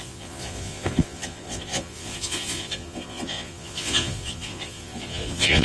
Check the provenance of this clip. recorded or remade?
remade